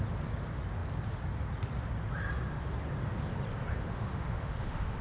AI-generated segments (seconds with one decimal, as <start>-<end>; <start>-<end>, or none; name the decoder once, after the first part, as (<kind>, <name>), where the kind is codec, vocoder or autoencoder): 3.7-5.0 (autoencoder, DAC-VAE)